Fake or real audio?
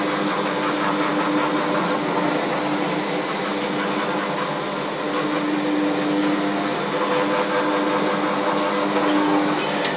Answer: real